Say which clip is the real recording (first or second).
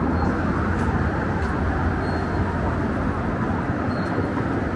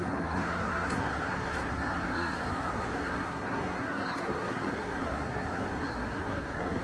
first